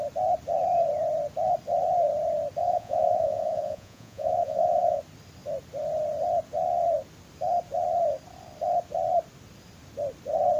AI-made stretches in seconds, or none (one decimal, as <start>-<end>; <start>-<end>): 2.6-5.0